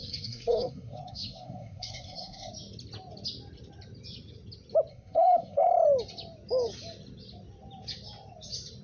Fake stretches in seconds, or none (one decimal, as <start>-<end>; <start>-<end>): 0.0-2.5; 4.9-5.7